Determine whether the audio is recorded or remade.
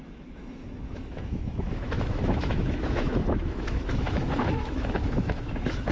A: remade